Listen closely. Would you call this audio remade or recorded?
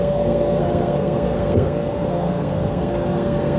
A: remade